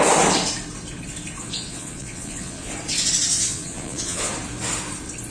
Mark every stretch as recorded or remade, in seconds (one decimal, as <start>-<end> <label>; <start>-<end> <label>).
0.0-1.4 recorded; 1.4-2.7 remade; 2.7-3.3 recorded; 3.3-4.3 remade; 4.3-5.3 recorded